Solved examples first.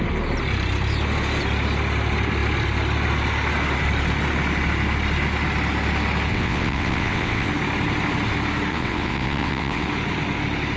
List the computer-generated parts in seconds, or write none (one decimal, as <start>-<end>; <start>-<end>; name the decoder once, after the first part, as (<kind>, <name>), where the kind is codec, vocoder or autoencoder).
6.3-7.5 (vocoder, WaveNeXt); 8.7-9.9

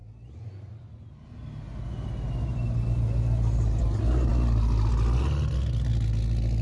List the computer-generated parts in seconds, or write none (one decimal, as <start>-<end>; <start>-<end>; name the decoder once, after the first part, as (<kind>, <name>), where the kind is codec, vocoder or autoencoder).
none

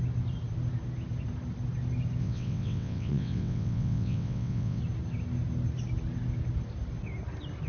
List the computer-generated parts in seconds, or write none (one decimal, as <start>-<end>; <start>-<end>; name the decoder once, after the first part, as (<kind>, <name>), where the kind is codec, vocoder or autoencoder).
2.2-4.8 (vocoder, WaveNeXt)

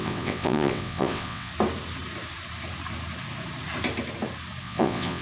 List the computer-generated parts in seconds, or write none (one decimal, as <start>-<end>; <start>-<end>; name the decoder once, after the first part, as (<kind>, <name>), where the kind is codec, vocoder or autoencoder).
0.0-1.5 (vocoder, WaveNeXt); 4.6-5.2

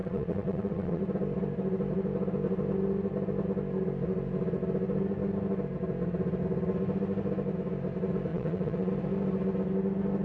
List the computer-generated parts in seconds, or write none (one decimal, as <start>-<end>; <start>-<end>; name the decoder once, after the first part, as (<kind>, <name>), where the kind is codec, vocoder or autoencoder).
0.0-1.0 (vocoder, WaveNeXt); 8.3-8.9

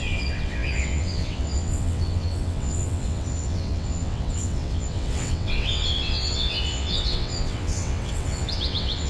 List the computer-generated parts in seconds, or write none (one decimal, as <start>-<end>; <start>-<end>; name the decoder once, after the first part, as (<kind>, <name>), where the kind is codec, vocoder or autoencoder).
0.0-9.1 (vocoder, WaveNeXt)

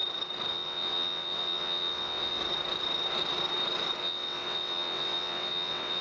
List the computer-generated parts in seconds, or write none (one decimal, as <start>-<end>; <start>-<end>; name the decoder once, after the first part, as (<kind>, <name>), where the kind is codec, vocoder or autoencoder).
0.5-2.4 (vocoder, WaveNeXt); 4.0-6.0

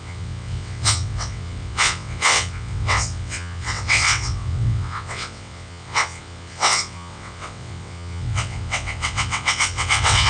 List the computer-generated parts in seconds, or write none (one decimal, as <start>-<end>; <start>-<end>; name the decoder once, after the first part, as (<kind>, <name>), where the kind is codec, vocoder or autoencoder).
0.0-10.3 (vocoder, WaveNeXt)